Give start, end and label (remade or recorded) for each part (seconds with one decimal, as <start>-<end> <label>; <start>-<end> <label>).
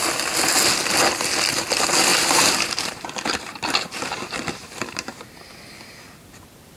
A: 0.0-2.1 recorded; 2.1-5.2 remade; 5.2-6.8 recorded